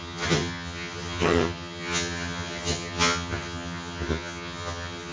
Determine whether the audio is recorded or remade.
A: remade